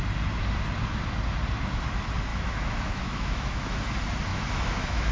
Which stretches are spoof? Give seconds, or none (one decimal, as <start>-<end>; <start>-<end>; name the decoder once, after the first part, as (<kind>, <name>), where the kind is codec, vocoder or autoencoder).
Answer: 2.3-3.8 (autoencoder, DAC-VAE); 4.3-5.1